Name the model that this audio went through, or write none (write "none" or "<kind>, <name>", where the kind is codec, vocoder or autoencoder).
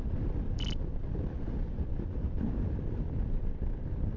vocoder, BigVGAN v2